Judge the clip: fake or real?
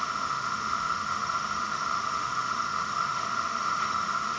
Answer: fake